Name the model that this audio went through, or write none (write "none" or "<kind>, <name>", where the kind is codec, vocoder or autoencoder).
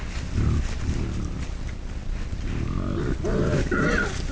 none